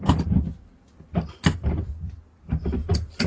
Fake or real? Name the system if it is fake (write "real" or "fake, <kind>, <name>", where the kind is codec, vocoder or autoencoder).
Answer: real